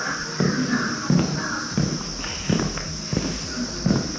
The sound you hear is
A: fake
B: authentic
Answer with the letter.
B